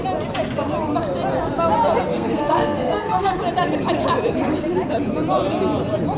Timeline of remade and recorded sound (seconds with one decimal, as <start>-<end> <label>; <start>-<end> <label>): 0.0-2.1 recorded; 2.1-3.4 remade; 3.4-6.2 recorded

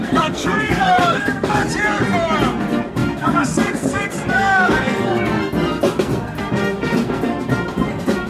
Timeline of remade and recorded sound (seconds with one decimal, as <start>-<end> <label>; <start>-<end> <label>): 0.0-1.6 remade; 1.6-2.5 recorded; 2.5-8.3 remade